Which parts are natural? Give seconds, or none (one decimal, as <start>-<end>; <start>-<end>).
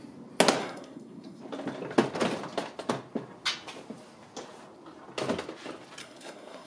0.0-0.6; 1.4-6.0